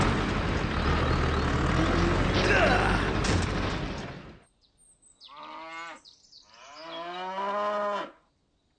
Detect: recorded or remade recorded